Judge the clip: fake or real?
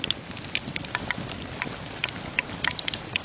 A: real